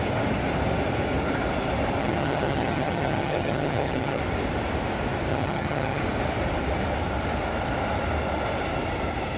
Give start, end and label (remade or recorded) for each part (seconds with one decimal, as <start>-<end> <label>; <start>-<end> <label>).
0.0-2.0 recorded; 2.0-4.2 remade; 4.2-5.3 recorded; 5.3-6.0 remade; 6.0-9.4 recorded